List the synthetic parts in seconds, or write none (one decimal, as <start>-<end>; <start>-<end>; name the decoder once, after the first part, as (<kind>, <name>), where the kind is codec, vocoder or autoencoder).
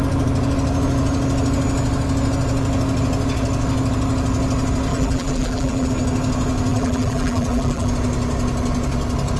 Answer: 4.9-5.9 (vocoder, BigVGAN v2); 6.7-7.9